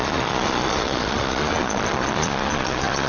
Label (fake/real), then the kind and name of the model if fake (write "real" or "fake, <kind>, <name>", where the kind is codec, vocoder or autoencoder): fake, vocoder, Vocos